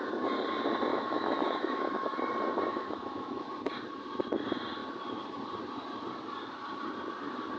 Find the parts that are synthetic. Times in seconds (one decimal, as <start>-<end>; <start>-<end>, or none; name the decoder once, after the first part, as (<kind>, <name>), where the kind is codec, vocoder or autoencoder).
0.9-2.2 (autoencoder, DAC-VAE); 2.7-3.5